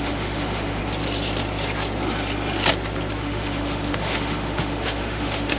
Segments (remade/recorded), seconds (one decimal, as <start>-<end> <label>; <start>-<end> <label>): 0.0-0.8 remade; 0.8-3.2 recorded; 3.2-5.6 remade